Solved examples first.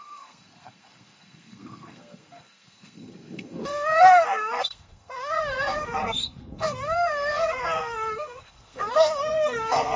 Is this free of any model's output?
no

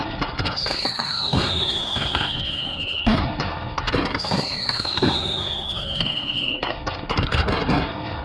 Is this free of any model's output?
no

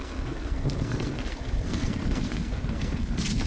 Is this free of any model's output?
no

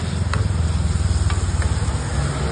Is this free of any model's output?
yes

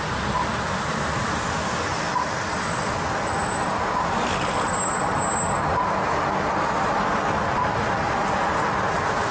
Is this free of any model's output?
yes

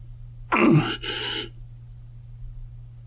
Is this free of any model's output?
yes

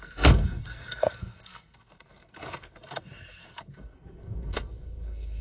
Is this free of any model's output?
no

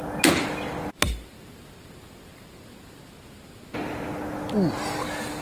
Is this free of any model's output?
yes